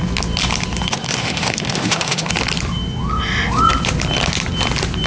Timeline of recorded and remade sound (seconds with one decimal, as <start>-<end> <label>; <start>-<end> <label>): 0.0-1.2 recorded; 1.2-2.3 remade; 2.3-5.1 recorded